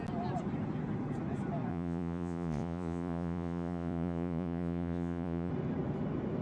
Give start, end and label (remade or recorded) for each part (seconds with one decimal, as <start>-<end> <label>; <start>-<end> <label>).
0.0-1.7 recorded; 1.7-5.5 remade; 5.5-6.4 recorded